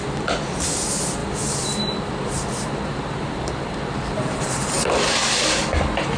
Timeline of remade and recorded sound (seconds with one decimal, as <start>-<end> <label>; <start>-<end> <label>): 0.0-1.2 recorded; 1.2-4.7 remade; 4.7-6.2 recorded